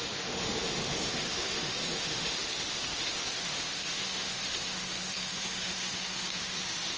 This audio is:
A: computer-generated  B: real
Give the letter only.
A